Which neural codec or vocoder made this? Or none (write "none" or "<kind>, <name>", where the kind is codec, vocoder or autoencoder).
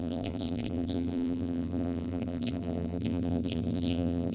vocoder, BigVGAN v2